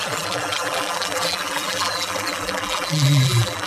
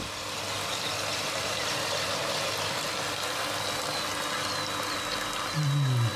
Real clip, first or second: second